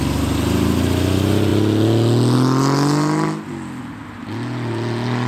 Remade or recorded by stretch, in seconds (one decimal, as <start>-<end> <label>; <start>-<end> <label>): 0.0-5.3 recorded